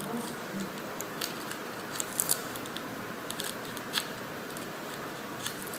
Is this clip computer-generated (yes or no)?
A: yes